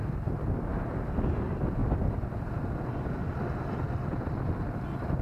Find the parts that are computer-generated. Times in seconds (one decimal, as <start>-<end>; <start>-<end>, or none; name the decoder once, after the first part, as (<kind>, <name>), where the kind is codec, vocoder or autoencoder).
1.8-3.2 (vocoder, BigVGAN v2)